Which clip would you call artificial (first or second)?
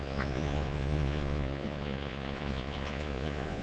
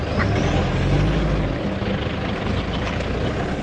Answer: first